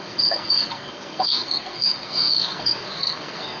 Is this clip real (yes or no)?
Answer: no